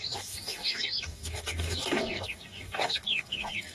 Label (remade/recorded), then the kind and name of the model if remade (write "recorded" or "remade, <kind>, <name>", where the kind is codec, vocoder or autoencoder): remade, codec, DAC